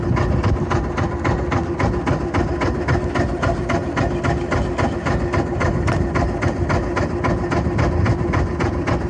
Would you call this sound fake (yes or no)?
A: no